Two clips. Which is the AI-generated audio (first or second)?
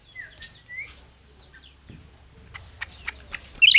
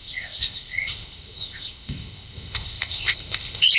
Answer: second